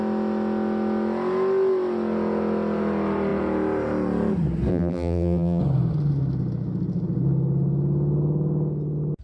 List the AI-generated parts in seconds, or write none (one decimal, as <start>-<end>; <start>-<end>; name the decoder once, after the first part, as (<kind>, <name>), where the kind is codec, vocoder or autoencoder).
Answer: 4.7-5.6 (vocoder, BigVGAN v2)